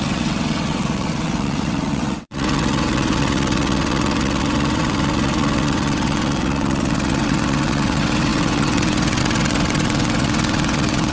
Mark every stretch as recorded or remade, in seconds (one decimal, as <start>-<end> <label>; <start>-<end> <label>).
0.0-11.1 remade